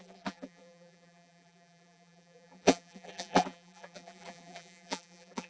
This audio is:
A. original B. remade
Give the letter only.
B